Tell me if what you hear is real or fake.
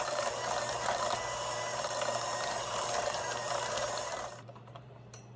fake